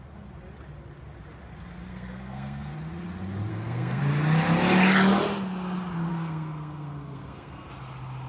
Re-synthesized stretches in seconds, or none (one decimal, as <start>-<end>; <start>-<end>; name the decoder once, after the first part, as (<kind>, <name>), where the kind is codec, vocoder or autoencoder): 1.9-2.7 (codec, SNAC); 3.5-4.0; 6.1-7.7